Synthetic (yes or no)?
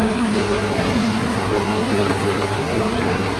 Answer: yes